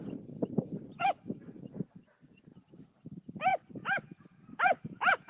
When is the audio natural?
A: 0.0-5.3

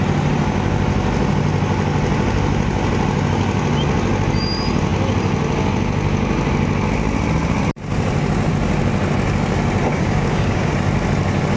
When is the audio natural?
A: 0.0-9.9; 10.7-11.6

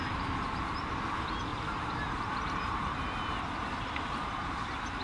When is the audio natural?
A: 0.0-1.5; 4.5-5.0

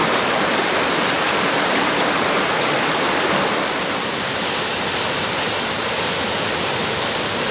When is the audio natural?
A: 0.0-7.5

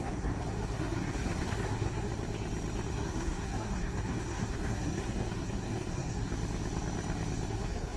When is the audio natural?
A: 2.1-2.9; 6.3-7.5

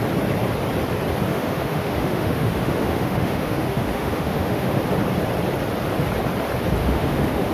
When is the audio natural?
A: 0.0-1.3; 4.8-6.8

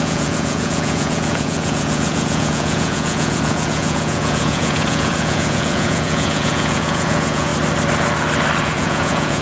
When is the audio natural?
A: 7.5-8.6

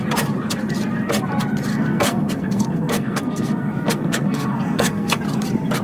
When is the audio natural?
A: 0.0-1.7; 5.2-5.8